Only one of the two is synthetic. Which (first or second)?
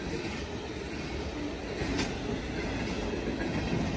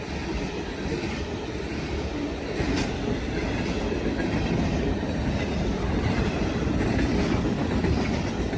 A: second